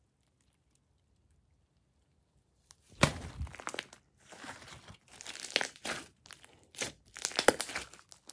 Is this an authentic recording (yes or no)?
yes